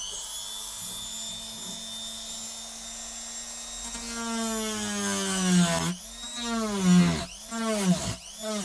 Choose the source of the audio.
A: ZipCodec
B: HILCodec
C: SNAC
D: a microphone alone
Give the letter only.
D